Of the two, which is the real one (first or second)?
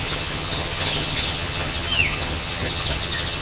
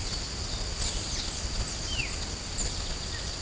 second